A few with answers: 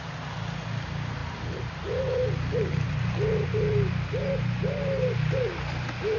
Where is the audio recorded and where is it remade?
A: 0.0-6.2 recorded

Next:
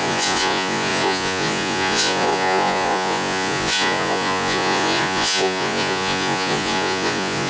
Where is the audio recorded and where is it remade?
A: 0.0-7.5 remade

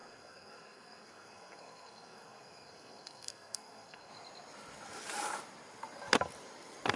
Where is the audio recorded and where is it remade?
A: 0.0-4.1 remade; 4.1-7.0 recorded

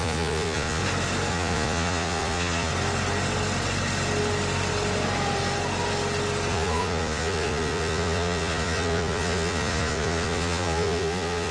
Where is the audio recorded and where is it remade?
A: 0.0-0.8 remade; 0.8-1.3 recorded; 1.3-2.7 remade; 2.7-6.5 recorded; 6.5-11.5 remade

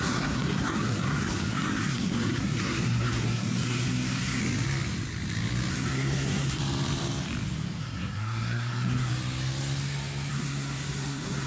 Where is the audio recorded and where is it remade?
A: 0.0-4.4 remade; 4.4-5.7 recorded; 5.7-6.6 remade; 6.6-7.8 recorded; 7.8-9.1 remade; 9.1-10.3 recorded; 10.3-11.5 remade